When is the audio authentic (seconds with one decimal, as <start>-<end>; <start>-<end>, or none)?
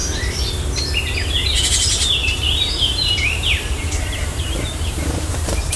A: 0.0-2.2